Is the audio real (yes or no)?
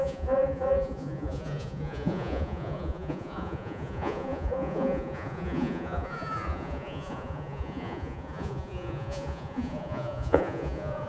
no